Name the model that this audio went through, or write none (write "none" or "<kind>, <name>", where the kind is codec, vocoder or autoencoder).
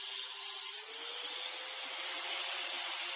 none